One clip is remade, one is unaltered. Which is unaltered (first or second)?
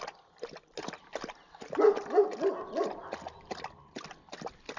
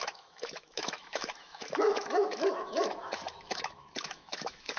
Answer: first